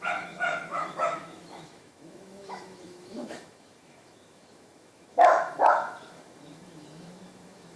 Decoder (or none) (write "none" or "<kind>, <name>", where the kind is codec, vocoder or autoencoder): autoencoder, DAC-VAE